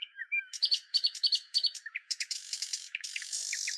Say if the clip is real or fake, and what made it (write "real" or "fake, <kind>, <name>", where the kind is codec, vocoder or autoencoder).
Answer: fake, autoencoder, DAC-VAE